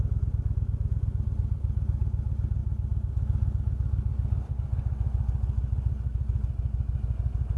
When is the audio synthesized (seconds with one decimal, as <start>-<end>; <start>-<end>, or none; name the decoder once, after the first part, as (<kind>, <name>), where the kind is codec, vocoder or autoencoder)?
none